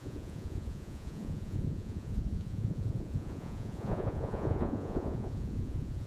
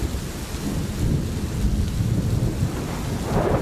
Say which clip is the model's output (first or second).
first